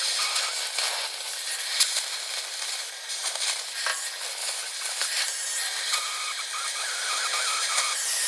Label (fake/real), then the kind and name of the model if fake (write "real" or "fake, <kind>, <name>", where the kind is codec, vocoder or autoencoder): real